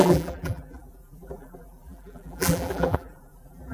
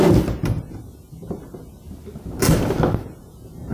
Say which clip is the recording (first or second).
second